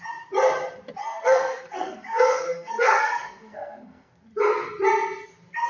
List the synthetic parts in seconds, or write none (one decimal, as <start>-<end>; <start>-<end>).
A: 1.0-4.1